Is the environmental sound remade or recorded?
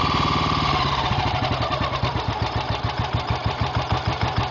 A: remade